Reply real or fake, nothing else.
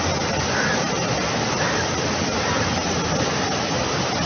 real